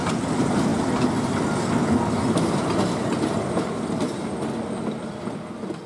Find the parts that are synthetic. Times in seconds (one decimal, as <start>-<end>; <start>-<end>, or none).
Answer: none